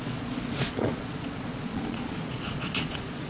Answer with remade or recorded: remade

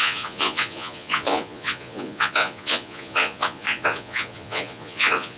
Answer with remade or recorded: remade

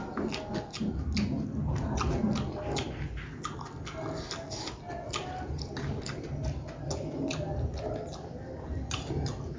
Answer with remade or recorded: recorded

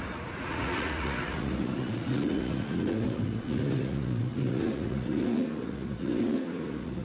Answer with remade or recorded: remade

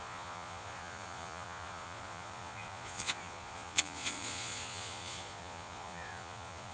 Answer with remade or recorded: remade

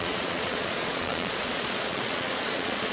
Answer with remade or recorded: remade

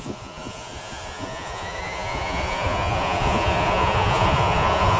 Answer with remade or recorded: remade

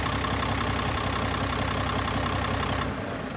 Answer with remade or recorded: recorded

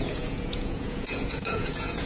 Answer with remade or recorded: remade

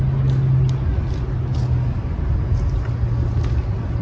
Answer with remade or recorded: recorded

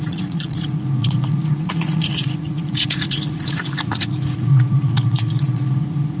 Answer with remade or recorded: remade